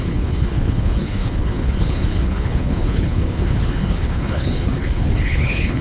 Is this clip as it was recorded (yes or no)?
no